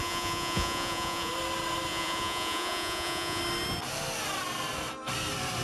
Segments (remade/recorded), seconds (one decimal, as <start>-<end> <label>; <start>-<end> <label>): 0.0-1.3 remade; 1.3-1.9 recorded; 1.9-3.4 remade; 3.4-5.6 recorded